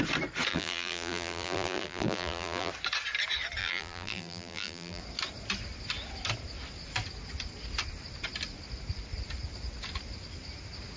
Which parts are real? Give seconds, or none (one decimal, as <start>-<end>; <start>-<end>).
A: 0.0-0.5; 2.7-3.6; 5.0-11.0